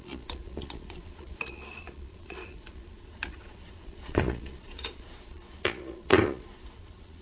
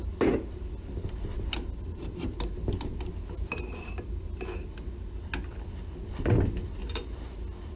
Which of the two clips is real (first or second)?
second